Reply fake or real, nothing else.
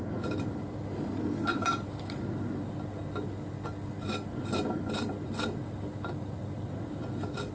real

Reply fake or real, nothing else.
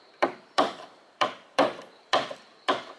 fake